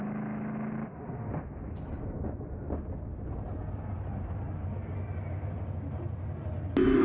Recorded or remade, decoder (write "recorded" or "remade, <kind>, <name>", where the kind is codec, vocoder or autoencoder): recorded